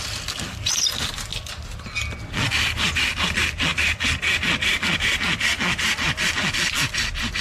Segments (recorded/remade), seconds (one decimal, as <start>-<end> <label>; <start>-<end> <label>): 0.0-7.4 recorded